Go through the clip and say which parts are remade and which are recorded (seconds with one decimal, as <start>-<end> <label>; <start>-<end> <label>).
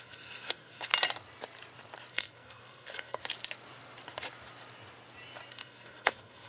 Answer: 0.0-0.9 remade; 0.9-2.1 recorded; 2.1-3.2 remade; 3.2-5.5 recorded; 5.5-6.5 remade